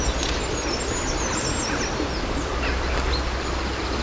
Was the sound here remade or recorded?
recorded